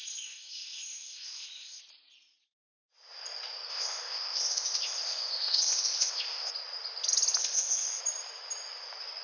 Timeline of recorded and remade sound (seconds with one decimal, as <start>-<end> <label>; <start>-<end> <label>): 0.0-1.8 remade; 1.8-3.7 recorded; 3.7-6.5 remade; 6.5-7.4 recorded; 7.4-8.0 remade; 8.0-9.2 recorded